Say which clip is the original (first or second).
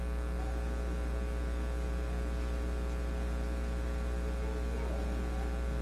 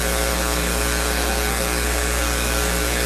first